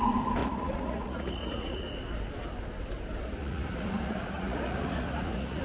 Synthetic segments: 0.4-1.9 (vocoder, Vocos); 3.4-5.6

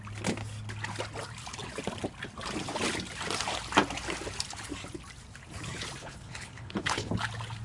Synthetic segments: 6.0-7.1 (codec, HILCodec)

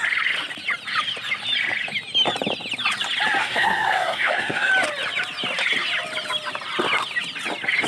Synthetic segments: 3.4-4.7 (codec, SNAC)